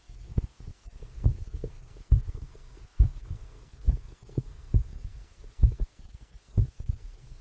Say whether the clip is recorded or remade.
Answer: remade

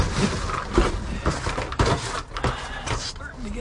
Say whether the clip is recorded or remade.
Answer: recorded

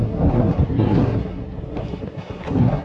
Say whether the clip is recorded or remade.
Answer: remade